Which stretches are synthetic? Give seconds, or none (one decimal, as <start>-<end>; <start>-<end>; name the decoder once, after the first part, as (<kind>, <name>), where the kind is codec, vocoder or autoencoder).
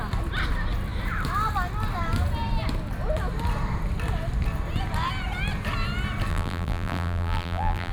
6.3-7.9 (vocoder, BigVGAN v2)